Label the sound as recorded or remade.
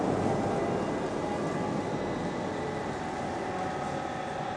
recorded